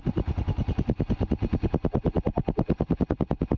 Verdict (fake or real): real